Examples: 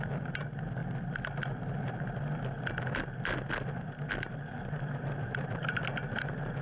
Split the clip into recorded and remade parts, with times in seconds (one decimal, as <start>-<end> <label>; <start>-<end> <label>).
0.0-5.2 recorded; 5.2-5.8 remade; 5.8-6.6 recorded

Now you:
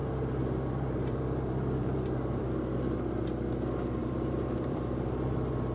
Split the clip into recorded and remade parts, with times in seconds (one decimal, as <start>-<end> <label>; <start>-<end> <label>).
0.0-2.4 remade; 2.4-4.0 recorded; 4.0-5.7 remade

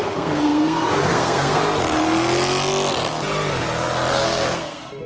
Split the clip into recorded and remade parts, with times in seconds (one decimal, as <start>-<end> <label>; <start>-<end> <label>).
0.0-1.6 remade; 1.6-4.1 recorded; 4.1-5.1 remade

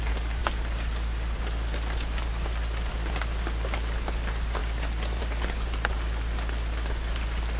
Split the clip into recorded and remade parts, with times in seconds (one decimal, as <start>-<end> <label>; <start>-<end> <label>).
0.0-7.6 recorded